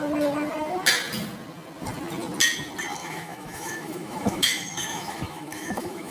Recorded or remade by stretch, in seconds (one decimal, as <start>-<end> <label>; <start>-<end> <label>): 0.0-3.0 recorded; 3.0-6.1 remade